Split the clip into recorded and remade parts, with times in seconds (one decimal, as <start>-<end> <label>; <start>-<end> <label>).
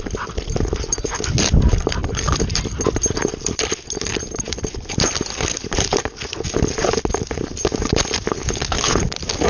0.0-8.4 recorded; 8.4-9.0 remade; 9.0-9.5 recorded